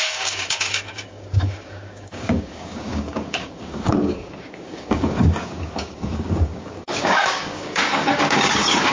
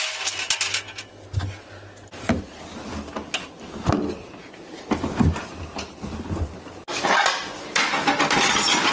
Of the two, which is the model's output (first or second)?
first